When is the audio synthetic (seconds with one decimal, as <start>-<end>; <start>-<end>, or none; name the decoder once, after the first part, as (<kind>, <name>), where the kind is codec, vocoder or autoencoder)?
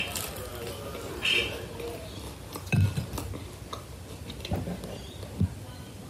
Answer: none